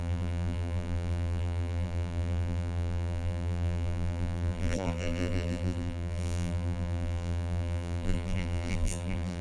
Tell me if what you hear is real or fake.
fake